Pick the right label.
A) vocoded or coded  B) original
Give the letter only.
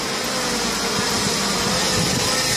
B